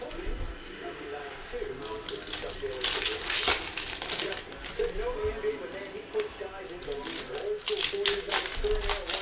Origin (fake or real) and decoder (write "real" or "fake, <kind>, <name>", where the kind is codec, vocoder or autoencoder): real